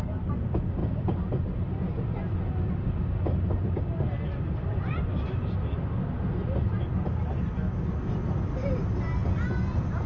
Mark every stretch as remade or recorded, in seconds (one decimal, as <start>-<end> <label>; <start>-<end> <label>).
0.0-10.1 recorded